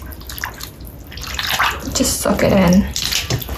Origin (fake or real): real